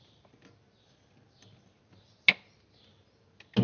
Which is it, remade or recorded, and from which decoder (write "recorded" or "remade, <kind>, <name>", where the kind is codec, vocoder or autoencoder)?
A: recorded